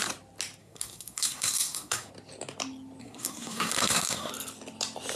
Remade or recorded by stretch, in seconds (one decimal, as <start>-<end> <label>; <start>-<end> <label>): 0.0-0.6 recorded; 0.6-2.1 remade; 2.1-3.0 recorded; 3.0-4.3 remade; 4.3-5.2 recorded